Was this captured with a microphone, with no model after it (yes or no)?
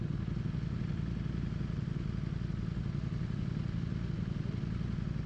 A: yes